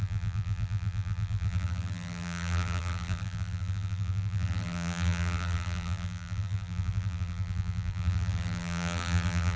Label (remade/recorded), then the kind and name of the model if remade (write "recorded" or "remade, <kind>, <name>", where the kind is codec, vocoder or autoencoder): remade, vocoder, BigVGAN v2